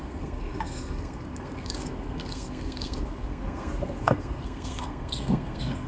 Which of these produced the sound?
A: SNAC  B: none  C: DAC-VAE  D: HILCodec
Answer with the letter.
A